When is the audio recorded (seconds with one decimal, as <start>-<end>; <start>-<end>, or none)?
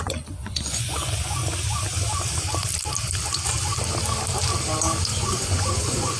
1.4-5.1